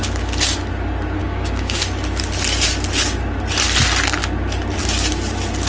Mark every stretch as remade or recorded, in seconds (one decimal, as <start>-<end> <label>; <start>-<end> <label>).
0.0-1.2 recorded; 1.2-1.8 remade; 1.8-5.7 recorded